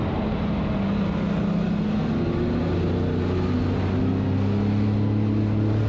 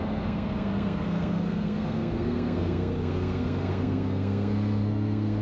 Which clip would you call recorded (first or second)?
first